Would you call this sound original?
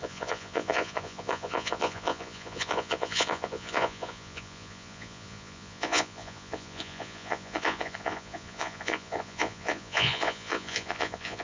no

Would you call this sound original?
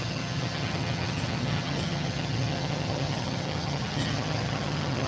no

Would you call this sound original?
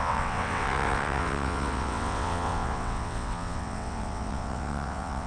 no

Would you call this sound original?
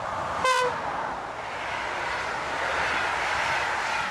yes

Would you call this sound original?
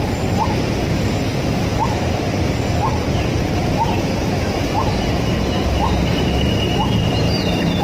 no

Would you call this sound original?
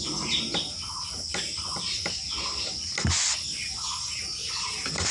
yes